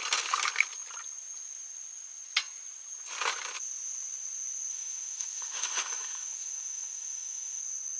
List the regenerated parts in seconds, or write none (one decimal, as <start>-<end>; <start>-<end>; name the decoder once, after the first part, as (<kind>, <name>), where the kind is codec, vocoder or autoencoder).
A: 4.7-7.6 (autoencoder, DAC-VAE)